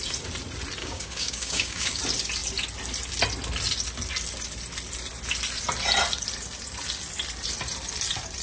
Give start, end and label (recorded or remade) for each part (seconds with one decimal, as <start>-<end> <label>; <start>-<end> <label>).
0.0-0.8 recorded; 0.8-2.0 remade; 2.0-8.4 recorded